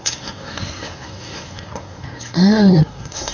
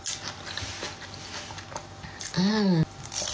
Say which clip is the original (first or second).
second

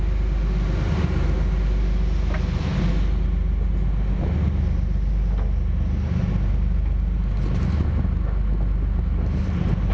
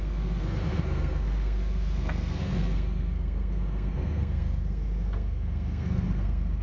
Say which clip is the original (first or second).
first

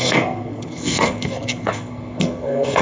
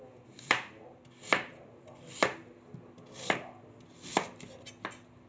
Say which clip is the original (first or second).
second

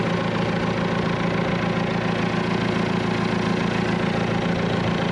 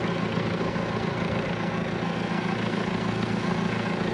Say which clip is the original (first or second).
first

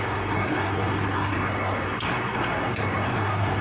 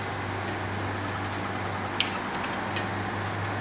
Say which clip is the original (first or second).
second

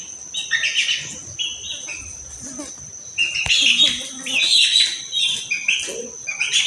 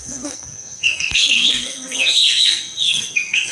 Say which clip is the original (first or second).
first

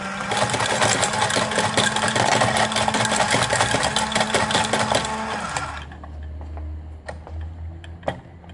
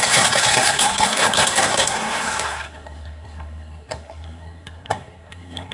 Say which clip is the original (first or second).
first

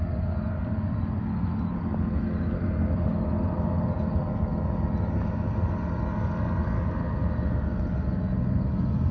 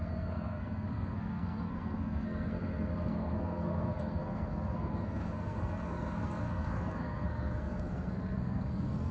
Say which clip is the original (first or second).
first